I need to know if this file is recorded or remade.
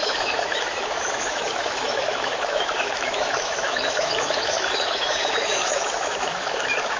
remade